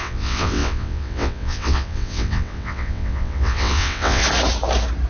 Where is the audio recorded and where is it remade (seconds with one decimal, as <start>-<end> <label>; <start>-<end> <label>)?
0.0-4.2 remade; 4.2-5.1 recorded